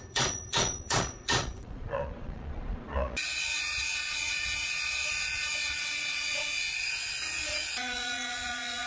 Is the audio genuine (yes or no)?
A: no